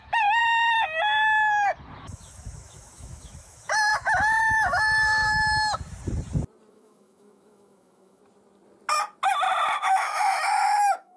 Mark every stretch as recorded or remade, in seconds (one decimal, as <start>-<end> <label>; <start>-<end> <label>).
0.0-0.4 remade; 0.4-2.0 recorded; 2.0-5.4 remade; 5.4-6.7 recorded; 6.7-8.2 remade; 8.2-9.8 recorded; 9.8-11.2 remade